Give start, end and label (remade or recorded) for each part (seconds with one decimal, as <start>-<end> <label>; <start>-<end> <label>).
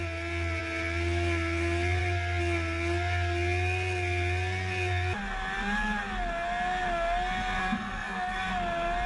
0.0-7.6 recorded; 7.6-8.5 remade; 8.5-9.1 recorded